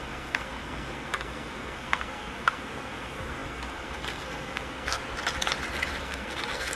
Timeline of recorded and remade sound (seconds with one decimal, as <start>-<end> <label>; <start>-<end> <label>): 0.0-5.0 remade; 5.0-6.0 recorded; 6.0-6.8 remade